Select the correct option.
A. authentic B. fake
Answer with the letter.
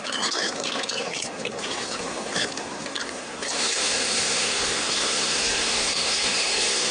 B